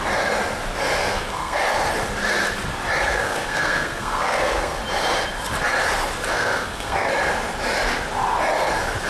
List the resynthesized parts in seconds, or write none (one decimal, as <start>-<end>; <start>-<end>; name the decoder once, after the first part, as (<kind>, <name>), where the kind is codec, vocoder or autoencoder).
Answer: 1.0-1.6 (codec, SNAC); 3.1-4.8; 6.3-7.1